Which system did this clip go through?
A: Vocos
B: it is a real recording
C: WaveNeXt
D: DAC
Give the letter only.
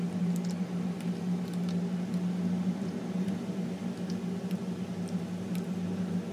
B